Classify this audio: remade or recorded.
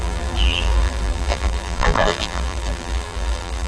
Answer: remade